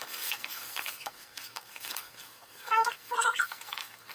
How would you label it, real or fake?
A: fake